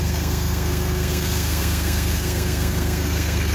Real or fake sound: fake